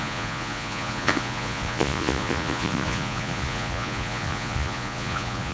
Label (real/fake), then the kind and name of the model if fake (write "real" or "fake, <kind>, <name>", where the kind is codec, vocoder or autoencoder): fake, vocoder, Vocos